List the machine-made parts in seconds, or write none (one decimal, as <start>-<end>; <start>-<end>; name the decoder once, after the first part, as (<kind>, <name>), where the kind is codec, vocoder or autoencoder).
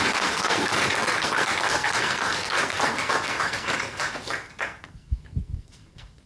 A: 0.0-6.3 (codec, SNAC)